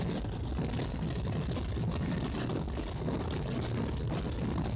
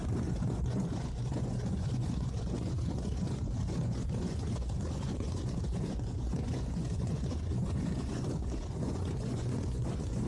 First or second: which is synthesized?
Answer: second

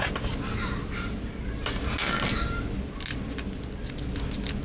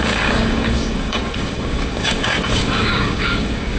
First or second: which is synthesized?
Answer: second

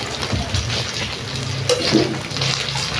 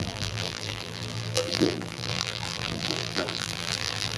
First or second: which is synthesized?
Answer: second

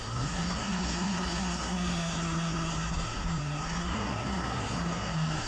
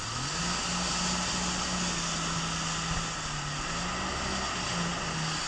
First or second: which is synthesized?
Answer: first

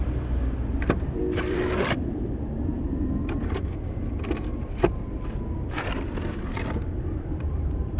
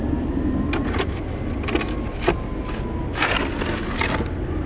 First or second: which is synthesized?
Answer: first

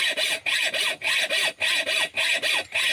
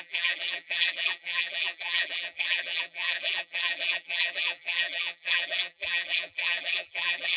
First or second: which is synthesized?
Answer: second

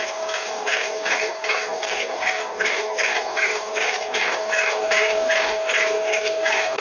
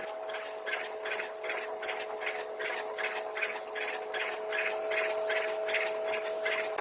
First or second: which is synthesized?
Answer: first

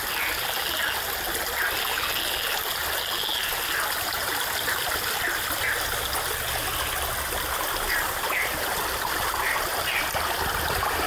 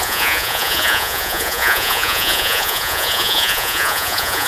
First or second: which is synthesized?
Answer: second